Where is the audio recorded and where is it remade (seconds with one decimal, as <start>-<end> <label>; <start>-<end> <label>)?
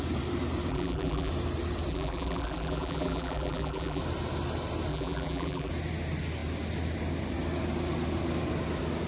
0.0-0.7 recorded; 0.7-1.3 remade; 1.3-1.9 recorded; 1.9-4.0 remade; 4.0-4.9 recorded; 4.9-5.7 remade; 5.7-9.1 recorded